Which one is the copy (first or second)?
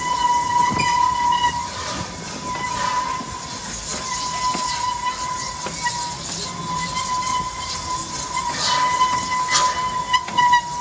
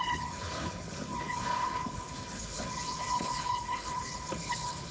second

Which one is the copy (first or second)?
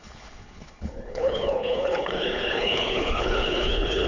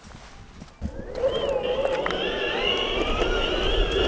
first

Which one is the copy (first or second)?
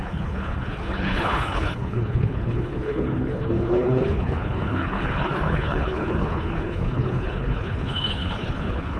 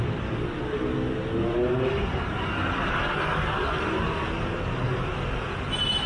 first